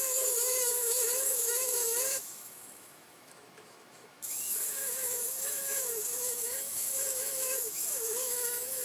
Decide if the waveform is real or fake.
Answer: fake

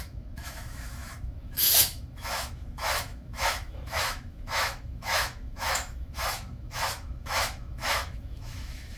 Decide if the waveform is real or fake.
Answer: fake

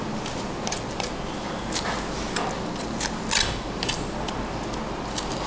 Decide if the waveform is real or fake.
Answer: real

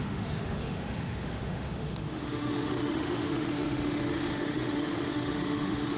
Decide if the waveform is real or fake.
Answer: fake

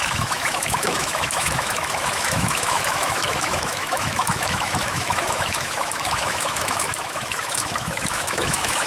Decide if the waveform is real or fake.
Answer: fake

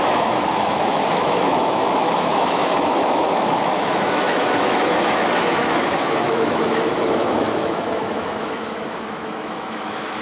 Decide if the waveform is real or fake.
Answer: fake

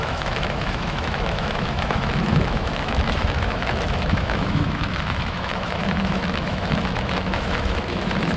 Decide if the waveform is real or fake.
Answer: fake